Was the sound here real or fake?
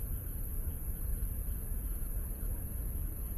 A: fake